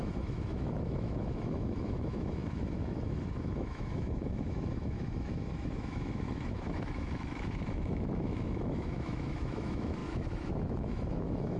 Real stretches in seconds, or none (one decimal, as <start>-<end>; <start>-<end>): none